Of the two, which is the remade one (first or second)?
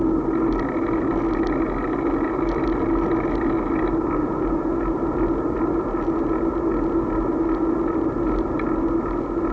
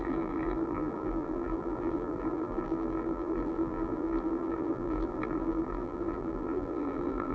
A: second